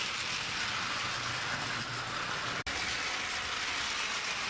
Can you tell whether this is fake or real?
real